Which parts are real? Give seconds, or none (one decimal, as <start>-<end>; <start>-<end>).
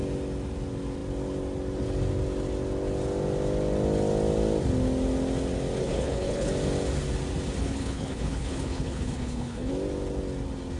0.0-5.8; 6.5-7.6; 9.7-10.8